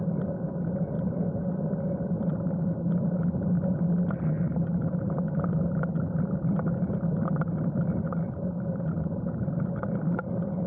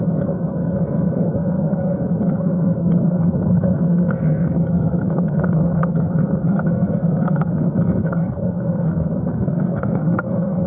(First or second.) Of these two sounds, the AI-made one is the second